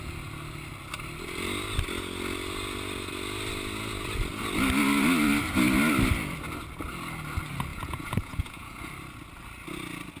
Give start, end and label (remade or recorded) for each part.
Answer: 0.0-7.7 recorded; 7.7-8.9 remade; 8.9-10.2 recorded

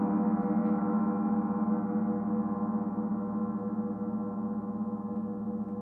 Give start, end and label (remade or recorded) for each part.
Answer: 0.0-0.6 recorded; 0.6-1.7 remade; 1.7-5.8 recorded

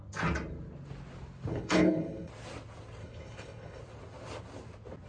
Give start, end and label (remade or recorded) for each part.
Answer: 0.0-1.5 recorded; 1.5-2.3 remade; 2.3-3.0 recorded; 3.0-3.8 remade; 3.8-5.1 recorded

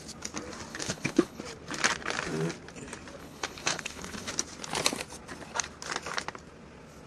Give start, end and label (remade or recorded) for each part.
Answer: 0.0-0.7 recorded; 0.7-1.4 remade; 1.4-3.2 recorded; 3.2-4.3 remade; 4.3-7.1 recorded

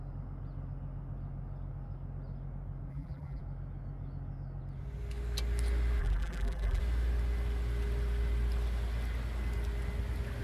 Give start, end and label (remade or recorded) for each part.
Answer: 0.0-2.9 recorded; 2.9-3.4 remade; 3.4-6.0 recorded; 6.0-6.8 remade; 6.8-10.4 recorded

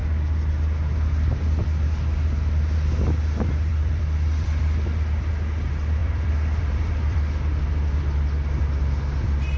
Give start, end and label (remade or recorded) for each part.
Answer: 0.0-3.7 recorded; 3.7-5.3 remade; 5.3-6.0 recorded; 6.0-7.3 remade; 7.3-9.6 recorded

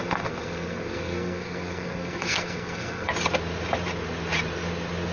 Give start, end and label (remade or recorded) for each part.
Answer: 0.0-3.1 remade; 3.1-5.1 recorded

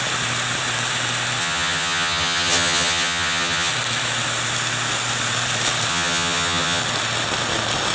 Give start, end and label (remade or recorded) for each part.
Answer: 0.0-1.4 recorded; 1.4-3.7 remade; 3.7-5.9 recorded; 5.9-6.8 remade; 6.8-7.9 recorded